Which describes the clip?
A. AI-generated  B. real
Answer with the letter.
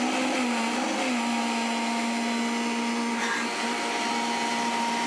B